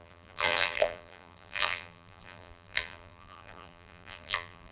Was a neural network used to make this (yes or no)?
yes